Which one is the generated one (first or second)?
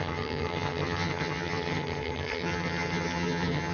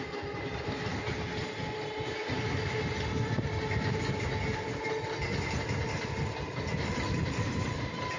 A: first